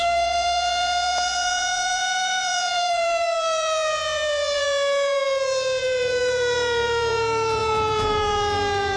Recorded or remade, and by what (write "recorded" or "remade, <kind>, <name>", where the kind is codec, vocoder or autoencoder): remade, vocoder, Vocos